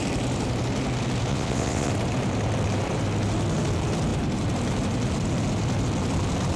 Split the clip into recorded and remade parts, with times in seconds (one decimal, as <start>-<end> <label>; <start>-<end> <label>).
0.0-1.3 recorded; 1.3-1.9 remade; 1.9-6.6 recorded